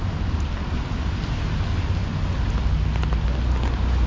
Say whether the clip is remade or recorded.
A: recorded